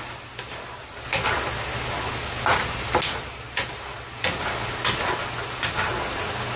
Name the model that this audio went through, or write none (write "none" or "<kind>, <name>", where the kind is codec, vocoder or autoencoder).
none